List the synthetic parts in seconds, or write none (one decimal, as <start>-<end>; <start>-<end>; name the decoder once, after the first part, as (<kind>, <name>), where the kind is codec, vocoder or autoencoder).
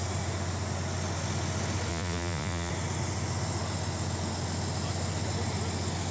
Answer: 1.9-2.7 (vocoder, Vocos)